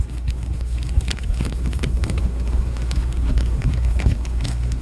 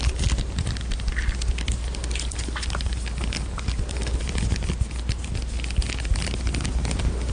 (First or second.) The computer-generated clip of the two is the first